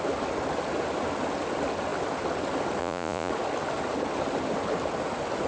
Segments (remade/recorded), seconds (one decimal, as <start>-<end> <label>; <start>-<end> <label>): 0.0-2.8 recorded; 2.8-3.3 remade; 3.3-5.5 recorded